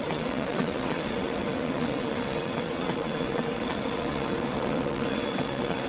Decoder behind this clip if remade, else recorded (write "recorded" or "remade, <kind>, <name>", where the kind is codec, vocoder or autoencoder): remade, vocoder, WaveNeXt